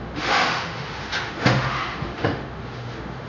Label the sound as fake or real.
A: fake